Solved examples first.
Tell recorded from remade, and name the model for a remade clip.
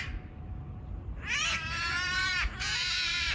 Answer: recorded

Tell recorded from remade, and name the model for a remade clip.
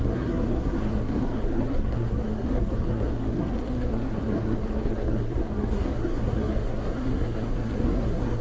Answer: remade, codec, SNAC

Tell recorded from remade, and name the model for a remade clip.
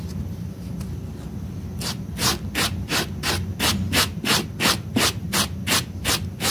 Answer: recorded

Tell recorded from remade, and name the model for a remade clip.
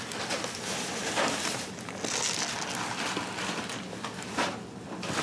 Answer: recorded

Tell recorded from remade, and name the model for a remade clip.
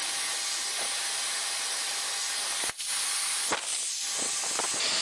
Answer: recorded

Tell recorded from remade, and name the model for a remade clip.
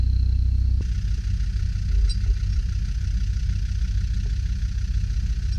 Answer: recorded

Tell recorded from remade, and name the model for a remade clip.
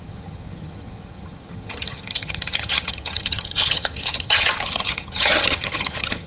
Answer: remade, vocoder, HiFi-GAN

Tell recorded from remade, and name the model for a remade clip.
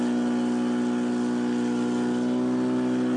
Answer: recorded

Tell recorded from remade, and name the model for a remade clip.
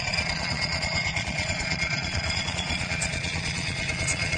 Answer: remade, vocoder, Vocos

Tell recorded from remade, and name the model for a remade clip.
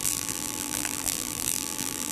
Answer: remade, vocoder, BigVGAN v2